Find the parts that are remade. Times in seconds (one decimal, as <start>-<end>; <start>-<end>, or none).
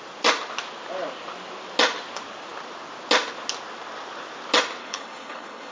4.8-5.7